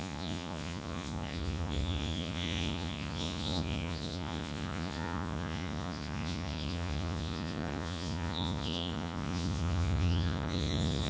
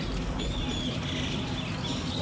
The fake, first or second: first